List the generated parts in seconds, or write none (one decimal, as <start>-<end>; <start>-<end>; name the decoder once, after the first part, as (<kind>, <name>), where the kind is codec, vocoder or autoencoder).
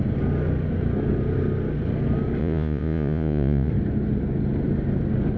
2.4-3.7 (vocoder, Vocos)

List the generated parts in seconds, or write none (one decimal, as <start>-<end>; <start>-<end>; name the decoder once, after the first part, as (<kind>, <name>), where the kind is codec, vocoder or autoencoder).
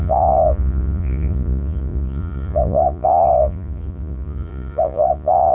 0.0-5.5 (vocoder, Vocos)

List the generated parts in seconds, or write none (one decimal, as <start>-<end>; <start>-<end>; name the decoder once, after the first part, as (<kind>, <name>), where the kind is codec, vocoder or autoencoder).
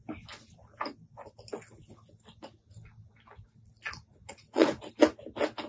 4.1-4.9 (vocoder, Vocos)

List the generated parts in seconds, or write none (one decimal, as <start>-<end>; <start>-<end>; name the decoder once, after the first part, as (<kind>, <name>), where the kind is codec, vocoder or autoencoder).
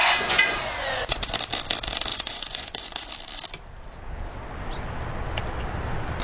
0.0-1.3 (vocoder, Vocos); 2.1-3.1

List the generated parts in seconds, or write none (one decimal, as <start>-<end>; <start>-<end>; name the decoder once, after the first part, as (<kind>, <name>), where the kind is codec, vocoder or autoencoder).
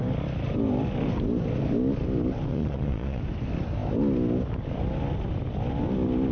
2.5-3.2 (vocoder, Vocos)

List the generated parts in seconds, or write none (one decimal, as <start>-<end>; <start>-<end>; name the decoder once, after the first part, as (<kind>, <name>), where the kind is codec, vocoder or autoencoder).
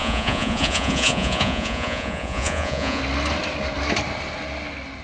0.0-3.0 (vocoder, Vocos)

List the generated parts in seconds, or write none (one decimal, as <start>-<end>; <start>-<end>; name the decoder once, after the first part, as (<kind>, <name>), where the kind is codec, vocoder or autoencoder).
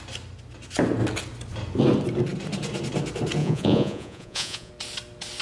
3.4-4.7 (vocoder, Vocos)